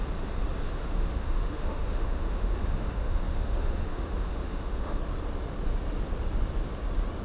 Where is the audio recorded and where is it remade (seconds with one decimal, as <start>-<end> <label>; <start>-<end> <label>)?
0.0-0.8 recorded; 0.8-5.0 remade; 5.0-7.2 recorded